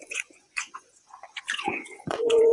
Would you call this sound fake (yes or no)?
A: yes